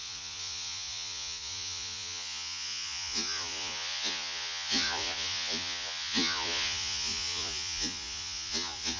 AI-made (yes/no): yes